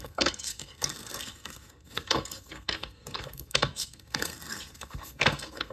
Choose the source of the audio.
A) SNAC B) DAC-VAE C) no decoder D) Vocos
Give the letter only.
A